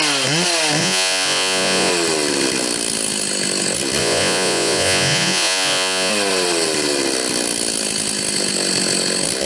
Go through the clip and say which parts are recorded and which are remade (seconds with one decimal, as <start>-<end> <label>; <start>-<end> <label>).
0.0-0.8 recorded; 0.8-1.9 remade; 1.9-4.0 recorded; 4.0-6.1 remade; 6.1-9.5 recorded